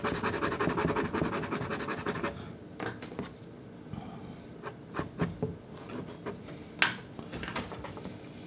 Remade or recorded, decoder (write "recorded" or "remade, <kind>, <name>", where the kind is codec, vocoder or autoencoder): recorded